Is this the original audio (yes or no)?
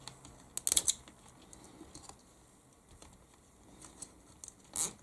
yes